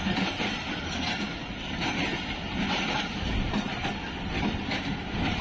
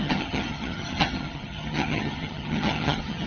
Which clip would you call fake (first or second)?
second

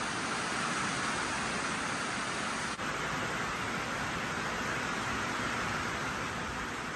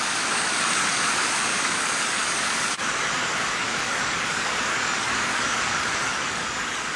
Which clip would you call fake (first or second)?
second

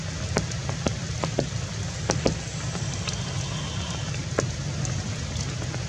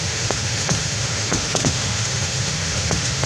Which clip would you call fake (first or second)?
second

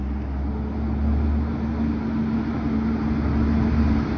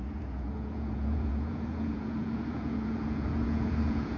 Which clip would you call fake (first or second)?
second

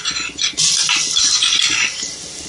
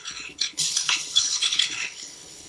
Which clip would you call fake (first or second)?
second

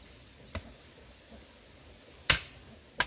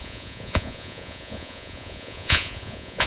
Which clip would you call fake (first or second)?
second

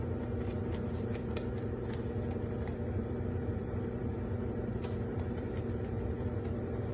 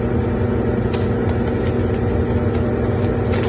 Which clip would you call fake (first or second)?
first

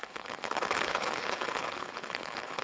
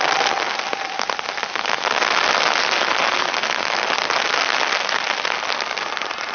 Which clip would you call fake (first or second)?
first